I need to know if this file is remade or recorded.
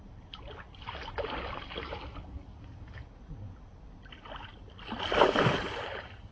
recorded